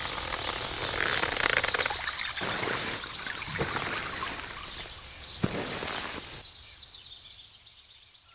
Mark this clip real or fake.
real